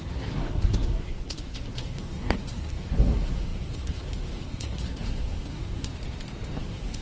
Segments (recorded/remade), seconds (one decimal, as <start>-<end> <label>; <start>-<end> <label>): 0.0-5.9 remade; 5.9-6.6 recorded; 6.6-7.0 remade

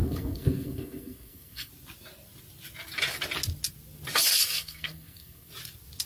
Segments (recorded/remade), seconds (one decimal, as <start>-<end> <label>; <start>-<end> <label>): 0.0-1.7 remade; 1.7-4.3 recorded; 4.3-5.5 remade; 5.5-6.1 recorded